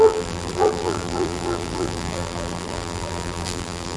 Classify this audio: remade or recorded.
remade